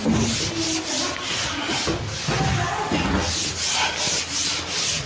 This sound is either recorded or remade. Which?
recorded